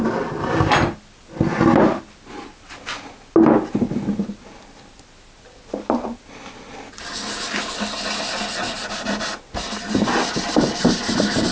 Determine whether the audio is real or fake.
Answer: real